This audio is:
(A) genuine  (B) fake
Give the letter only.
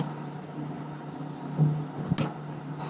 A